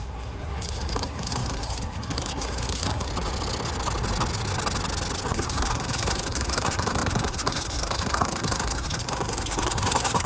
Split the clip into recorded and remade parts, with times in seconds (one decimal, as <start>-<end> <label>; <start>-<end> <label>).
0.0-3.1 remade; 3.1-5.3 recorded; 5.3-10.3 remade